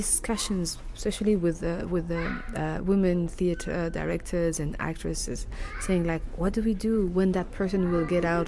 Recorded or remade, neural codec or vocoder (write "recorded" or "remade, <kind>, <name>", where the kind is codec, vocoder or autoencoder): recorded